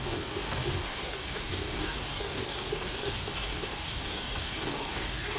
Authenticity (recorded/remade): remade